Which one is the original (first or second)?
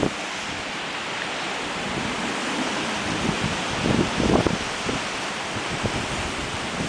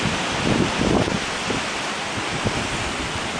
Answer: first